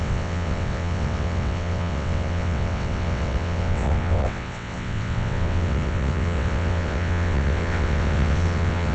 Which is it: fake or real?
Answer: fake